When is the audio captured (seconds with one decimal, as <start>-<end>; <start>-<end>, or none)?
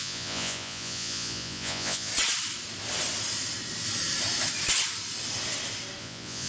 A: 2.1-6.0